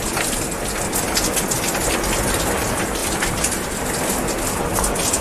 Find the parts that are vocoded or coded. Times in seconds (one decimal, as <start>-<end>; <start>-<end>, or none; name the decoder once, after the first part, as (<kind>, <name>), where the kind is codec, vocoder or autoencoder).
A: none